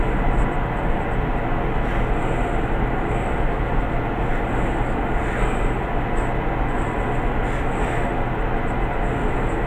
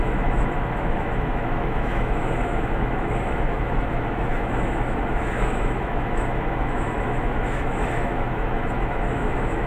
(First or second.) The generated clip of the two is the second